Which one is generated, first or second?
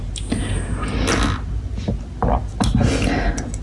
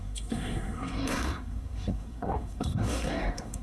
second